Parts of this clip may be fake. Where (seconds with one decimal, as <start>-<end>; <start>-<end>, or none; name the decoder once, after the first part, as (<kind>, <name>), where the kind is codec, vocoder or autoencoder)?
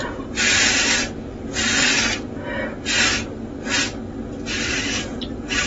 0.0-1.5 (vocoder, BigVGAN v2); 4.7-5.7